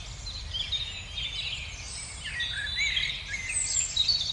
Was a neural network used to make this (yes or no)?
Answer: no